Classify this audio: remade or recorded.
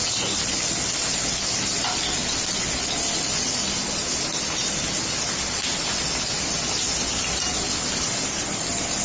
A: recorded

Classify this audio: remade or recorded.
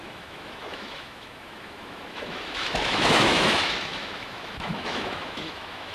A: remade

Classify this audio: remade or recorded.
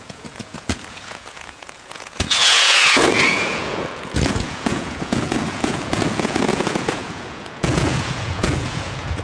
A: remade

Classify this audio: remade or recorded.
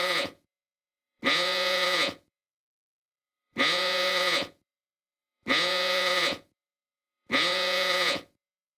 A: remade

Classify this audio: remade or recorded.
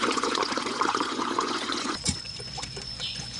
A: remade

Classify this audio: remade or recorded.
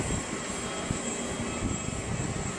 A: recorded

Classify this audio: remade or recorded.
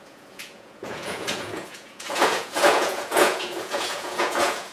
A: remade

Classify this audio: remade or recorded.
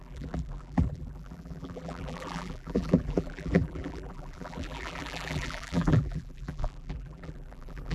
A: remade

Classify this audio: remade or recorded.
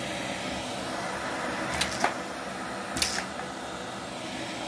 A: recorded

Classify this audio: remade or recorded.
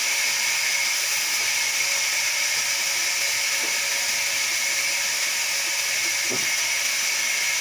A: recorded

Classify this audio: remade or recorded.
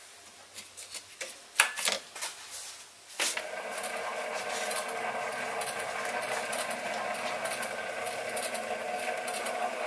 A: recorded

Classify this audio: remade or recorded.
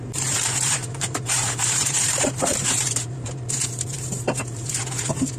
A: remade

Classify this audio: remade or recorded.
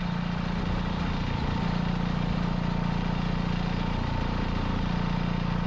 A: recorded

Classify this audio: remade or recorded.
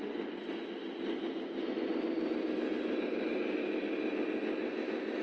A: recorded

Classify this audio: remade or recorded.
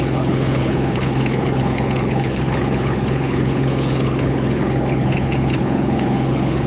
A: remade